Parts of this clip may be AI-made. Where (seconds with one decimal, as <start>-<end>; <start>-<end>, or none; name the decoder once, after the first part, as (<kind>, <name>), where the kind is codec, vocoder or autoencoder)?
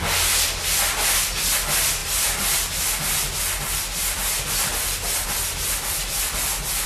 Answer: none